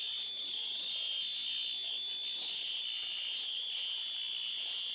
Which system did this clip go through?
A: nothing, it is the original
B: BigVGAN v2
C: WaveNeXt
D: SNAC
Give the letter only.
A